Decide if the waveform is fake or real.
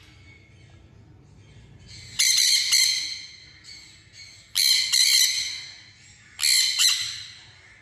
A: real